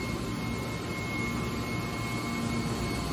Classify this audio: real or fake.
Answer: real